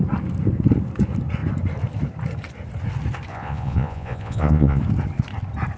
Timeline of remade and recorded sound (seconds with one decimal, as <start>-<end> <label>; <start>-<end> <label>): 0.0-3.3 recorded; 3.3-4.8 remade; 4.8-5.8 recorded